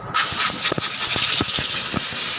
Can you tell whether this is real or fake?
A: real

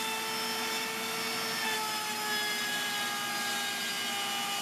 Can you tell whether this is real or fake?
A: real